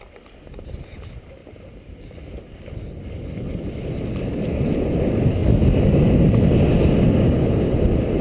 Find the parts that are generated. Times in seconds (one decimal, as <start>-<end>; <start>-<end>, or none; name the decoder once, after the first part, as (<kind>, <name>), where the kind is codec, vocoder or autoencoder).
none